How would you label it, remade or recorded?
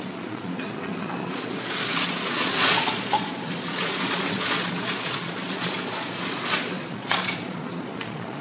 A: remade